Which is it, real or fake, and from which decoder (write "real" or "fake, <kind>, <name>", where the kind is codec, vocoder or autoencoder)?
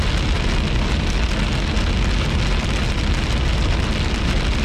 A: real